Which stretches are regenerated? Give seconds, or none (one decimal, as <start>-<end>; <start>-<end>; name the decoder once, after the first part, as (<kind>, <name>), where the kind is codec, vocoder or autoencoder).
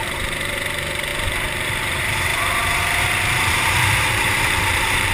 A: 0.0-2.3 (vocoder, BigVGAN v2); 3.5-5.1